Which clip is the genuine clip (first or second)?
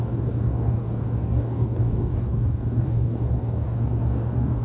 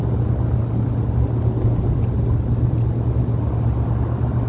second